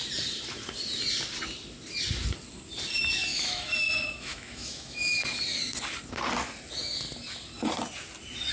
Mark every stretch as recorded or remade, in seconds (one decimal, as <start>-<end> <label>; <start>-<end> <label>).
0.0-3.3 recorded; 3.3-5.2 remade; 5.2-8.5 recorded